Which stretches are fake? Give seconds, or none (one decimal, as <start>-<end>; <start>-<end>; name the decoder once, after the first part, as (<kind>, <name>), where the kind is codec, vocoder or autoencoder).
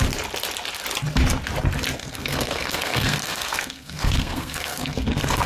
2.0-5.5 (codec, SNAC)